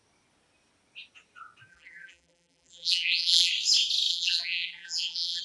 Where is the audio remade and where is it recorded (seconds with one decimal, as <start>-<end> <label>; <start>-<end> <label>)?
0.0-1.7 recorded; 1.7-3.5 remade; 3.5-4.1 recorded; 4.1-5.4 remade